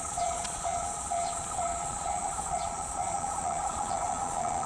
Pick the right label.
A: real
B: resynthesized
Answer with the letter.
B